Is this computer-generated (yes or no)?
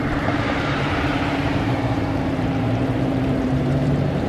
yes